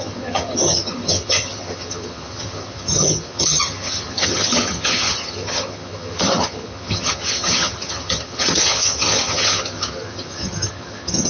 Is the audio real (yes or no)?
no